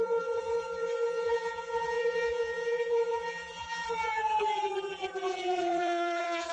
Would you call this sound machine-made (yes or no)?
yes